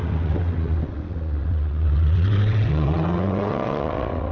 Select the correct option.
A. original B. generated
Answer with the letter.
B